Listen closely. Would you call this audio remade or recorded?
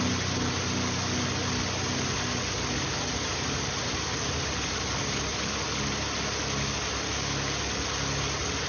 recorded